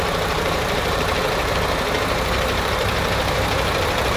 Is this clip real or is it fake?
fake